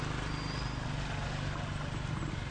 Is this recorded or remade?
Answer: recorded